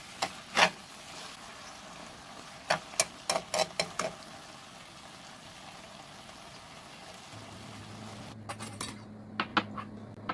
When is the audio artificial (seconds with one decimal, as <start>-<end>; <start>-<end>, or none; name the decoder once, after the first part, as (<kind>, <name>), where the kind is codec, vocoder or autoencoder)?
none